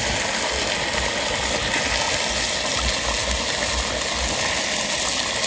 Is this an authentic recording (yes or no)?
yes